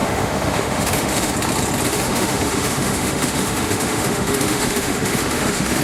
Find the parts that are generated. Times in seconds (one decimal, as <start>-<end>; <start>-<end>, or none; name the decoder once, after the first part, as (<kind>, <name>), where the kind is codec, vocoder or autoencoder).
0.0-1.3 (autoencoder, DAC-VAE); 1.9-5.8